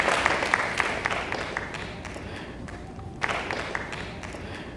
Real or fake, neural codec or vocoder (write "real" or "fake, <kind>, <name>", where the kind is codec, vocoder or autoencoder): real